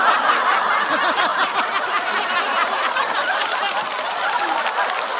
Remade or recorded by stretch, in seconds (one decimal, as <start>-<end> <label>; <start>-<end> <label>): 0.0-5.2 recorded